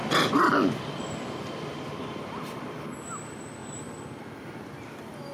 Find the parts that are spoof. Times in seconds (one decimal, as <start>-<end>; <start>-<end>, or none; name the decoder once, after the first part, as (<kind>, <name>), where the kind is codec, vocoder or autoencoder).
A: 0.0-3.6 (vocoder, BigVGAN v2); 4.2-5.3